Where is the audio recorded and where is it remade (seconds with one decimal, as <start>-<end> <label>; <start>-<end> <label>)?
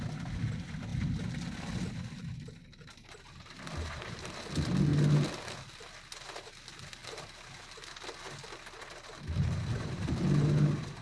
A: 0.0-7.0 recorded; 7.0-10.1 remade; 10.1-11.0 recorded